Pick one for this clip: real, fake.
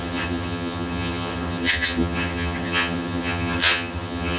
fake